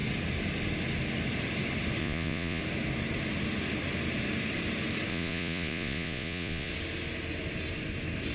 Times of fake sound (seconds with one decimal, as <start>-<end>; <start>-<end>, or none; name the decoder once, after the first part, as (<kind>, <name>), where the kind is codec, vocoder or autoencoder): 2.0-2.6 (vocoder, Vocos); 5.1-6.7